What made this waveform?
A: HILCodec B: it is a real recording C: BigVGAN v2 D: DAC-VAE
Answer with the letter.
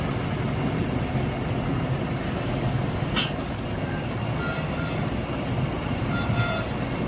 B